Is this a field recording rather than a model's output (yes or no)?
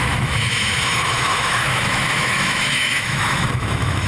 no